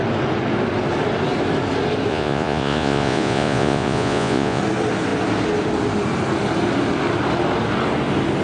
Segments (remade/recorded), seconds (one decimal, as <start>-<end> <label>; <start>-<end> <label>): 0.0-2.1 recorded; 2.1-4.6 remade; 4.6-8.4 recorded